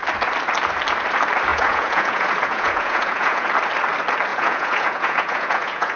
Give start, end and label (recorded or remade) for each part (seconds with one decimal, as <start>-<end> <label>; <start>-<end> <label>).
0.0-1.5 recorded; 1.5-3.5 remade; 3.5-4.3 recorded; 4.3-6.0 remade